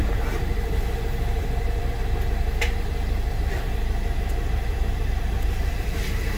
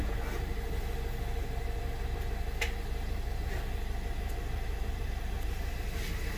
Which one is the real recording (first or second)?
second